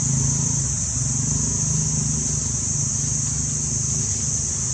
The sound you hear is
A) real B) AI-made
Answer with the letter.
A